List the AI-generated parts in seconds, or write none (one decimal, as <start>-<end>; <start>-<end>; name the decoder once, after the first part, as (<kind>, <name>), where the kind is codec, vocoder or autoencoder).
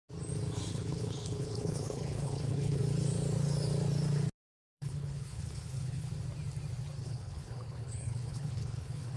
0.7-2.8 (codec, HILCodec); 4.5-6.1; 7.0-9.2